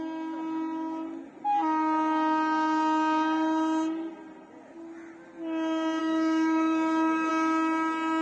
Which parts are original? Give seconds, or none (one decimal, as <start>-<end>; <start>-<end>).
0.0-6.0; 7.3-8.2